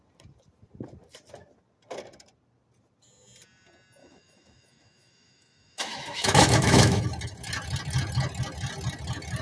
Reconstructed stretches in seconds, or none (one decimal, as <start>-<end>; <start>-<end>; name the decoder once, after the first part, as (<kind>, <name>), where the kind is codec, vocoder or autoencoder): 4.0-7.0 (autoencoder, DAC-VAE)